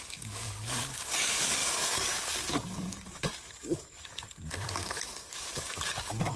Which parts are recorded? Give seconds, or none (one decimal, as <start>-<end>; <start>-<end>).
none